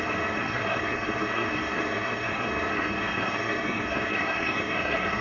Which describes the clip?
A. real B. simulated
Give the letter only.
B